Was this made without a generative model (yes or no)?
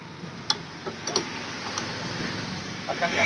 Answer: yes